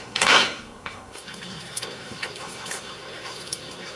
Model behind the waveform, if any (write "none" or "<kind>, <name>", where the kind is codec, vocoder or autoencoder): codec, SNAC